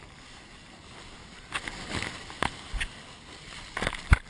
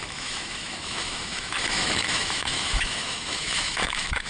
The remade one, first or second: second